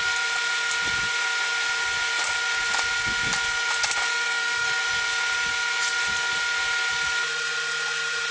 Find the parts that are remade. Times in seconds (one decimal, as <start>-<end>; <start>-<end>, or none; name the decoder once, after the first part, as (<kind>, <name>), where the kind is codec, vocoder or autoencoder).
4.1-4.8 (codec, DAC)